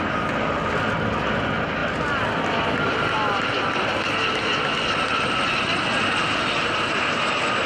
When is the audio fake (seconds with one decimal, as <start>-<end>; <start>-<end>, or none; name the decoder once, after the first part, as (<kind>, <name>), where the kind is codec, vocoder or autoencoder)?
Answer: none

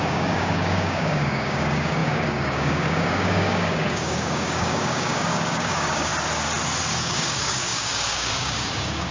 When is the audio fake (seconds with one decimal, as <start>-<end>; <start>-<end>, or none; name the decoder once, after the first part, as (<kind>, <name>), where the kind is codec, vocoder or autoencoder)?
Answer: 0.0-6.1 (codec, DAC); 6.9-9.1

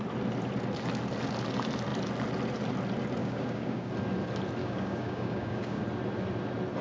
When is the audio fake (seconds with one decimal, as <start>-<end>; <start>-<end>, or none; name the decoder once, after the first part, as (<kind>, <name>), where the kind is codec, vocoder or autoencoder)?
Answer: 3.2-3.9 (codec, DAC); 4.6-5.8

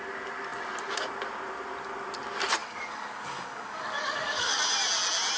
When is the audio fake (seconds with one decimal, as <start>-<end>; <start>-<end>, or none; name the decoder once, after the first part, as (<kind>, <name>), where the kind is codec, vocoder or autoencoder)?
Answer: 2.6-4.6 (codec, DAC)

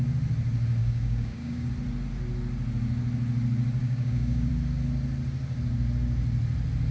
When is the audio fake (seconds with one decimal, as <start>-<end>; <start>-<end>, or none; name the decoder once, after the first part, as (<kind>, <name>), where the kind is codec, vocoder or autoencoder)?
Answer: 0.8-1.7 (codec, DAC); 3.8-4.5

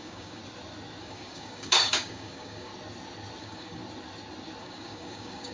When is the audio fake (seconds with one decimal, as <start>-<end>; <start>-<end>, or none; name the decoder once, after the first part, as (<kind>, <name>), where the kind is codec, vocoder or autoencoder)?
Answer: 0.0-0.4 (codec, DAC); 1.0-2.7; 3.4-3.8; 4.6-5.5

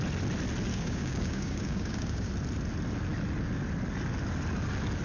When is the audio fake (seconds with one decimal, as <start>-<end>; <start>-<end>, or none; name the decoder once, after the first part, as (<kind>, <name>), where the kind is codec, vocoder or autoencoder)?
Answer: 0.7-2.3 (codec, DAC)

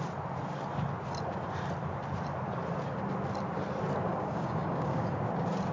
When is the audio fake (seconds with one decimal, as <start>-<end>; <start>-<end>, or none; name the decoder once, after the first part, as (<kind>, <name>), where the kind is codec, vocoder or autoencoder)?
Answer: 4.1-5.2 (codec, DAC)